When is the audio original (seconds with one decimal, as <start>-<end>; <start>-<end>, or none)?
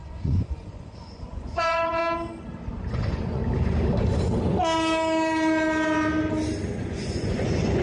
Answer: 2.0-2.9; 3.4-6.8